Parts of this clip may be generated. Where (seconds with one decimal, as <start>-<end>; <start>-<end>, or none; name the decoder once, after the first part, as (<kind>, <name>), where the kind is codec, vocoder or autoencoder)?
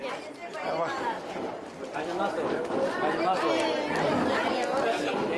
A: 0.4-2.9 (vocoder, BigVGAN v2)